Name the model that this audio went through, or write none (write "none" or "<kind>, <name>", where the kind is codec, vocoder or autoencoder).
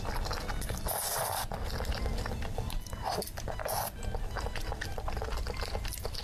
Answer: none